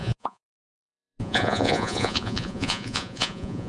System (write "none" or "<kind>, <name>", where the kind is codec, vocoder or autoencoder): vocoder, Vocos